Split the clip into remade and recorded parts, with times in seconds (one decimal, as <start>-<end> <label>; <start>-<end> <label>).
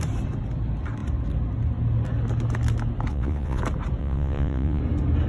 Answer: 0.0-3.1 recorded; 3.1-3.6 remade; 3.6-4.0 recorded; 4.0-4.8 remade; 4.8-5.3 recorded